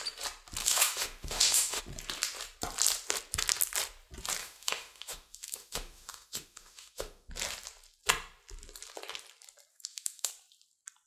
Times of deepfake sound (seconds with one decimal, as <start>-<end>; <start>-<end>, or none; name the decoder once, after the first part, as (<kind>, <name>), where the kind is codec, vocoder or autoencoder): 0.6-1.8 (autoencoder, DAC-VAE); 4.4-7.3; 9.7-10.3